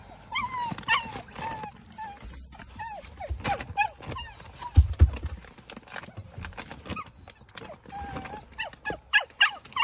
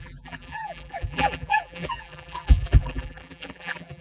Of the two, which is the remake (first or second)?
second